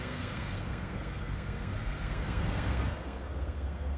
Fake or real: fake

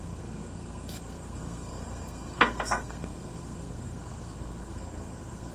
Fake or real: fake